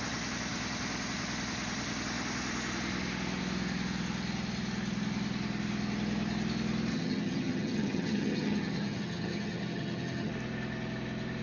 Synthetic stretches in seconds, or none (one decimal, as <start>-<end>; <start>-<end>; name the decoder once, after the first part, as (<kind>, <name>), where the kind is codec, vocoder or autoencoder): 6.9-10.3 (vocoder, HiFi-GAN)